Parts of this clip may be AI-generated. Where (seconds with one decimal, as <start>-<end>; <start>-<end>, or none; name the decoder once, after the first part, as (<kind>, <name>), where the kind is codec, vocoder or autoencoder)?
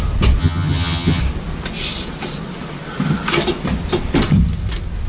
0.4-1.2 (vocoder, HiFi-GAN)